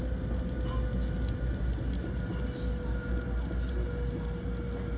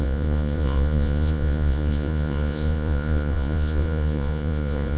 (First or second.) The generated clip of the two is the second